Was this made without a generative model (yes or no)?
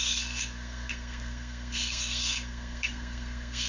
no